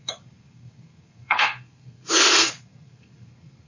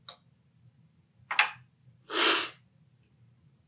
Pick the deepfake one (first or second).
first